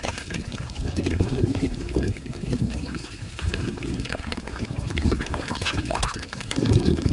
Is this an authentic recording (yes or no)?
no